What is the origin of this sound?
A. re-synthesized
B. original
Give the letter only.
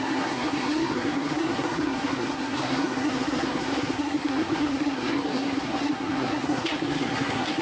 A